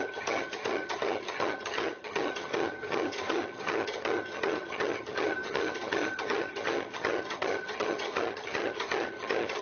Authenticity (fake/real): fake